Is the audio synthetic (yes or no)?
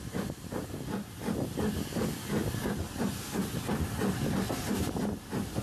no